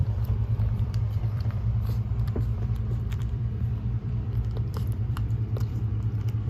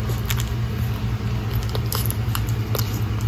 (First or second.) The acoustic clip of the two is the second